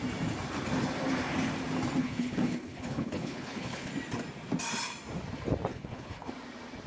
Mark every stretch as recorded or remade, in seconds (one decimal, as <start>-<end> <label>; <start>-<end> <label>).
0.0-2.0 recorded; 2.0-3.9 remade; 3.9-5.7 recorded; 5.7-6.3 remade; 6.3-6.9 recorded